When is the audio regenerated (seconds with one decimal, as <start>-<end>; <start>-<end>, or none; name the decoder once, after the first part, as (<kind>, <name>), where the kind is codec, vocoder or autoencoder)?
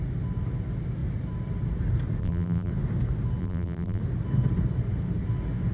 2.2-2.7 (vocoder, BigVGAN v2); 3.4-4.0